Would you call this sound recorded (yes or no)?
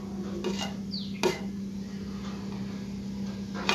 yes